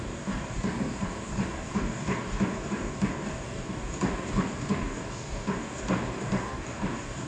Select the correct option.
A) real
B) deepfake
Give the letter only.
B